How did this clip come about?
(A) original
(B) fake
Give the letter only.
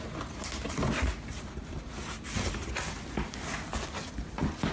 A